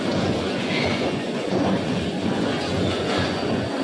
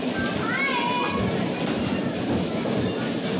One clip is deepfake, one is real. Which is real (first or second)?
second